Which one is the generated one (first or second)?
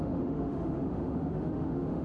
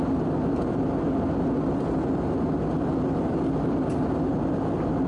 first